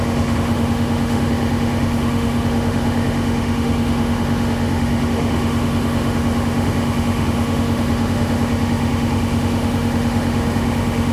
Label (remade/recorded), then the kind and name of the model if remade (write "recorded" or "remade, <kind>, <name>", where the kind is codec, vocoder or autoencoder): remade, autoencoder, DAC-VAE